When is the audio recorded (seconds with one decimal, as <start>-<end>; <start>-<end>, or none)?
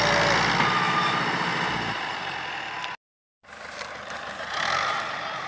0.0-5.5